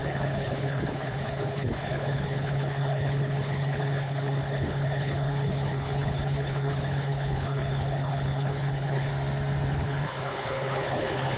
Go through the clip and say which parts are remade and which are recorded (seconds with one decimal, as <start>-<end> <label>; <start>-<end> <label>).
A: 0.0-9.1 remade; 9.1-9.7 recorded; 9.7-11.4 remade